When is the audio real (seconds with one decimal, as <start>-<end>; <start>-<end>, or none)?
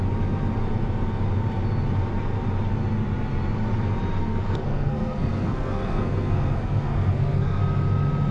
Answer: 0.0-4.2; 7.6-8.3